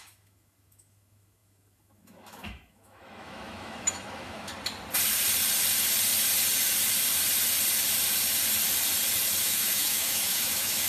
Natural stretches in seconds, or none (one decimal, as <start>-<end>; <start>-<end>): 4.5-9.4